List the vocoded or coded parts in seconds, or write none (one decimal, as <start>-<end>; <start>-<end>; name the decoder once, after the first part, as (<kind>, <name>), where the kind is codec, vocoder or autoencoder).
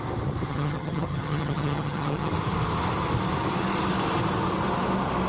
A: 0.5-2.3 (vocoder, HiFi-GAN)